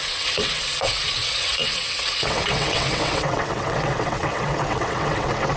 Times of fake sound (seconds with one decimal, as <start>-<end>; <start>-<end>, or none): 0.0-5.6